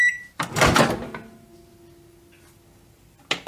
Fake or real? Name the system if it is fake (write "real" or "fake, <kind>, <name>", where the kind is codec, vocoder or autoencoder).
real